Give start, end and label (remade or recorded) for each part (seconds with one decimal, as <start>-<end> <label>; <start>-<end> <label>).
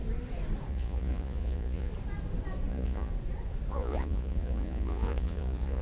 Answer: 0.0-0.7 recorded; 0.7-1.9 remade; 1.9-2.7 recorded; 2.7-3.1 remade; 3.1-3.7 recorded; 3.7-5.8 remade